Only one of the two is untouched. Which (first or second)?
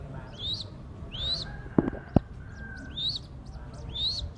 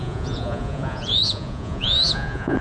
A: first